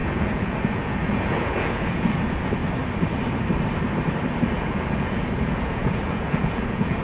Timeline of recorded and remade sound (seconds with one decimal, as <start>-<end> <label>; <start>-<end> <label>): 0.0-2.6 remade; 2.6-4.4 recorded; 4.4-7.0 remade